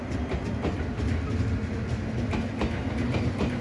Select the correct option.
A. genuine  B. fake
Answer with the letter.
A